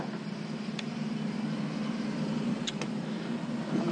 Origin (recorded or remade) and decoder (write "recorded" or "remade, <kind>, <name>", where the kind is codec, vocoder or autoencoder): recorded